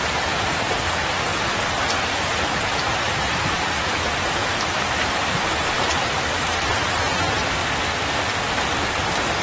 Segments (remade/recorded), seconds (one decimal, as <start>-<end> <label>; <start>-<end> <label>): 0.0-1.3 remade; 1.3-2.0 recorded; 2.0-7.6 remade; 7.6-9.4 recorded